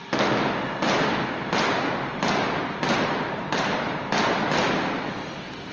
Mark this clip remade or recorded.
recorded